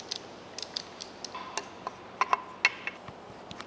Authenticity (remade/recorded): recorded